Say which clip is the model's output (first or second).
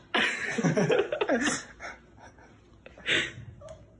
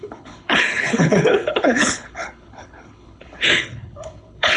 second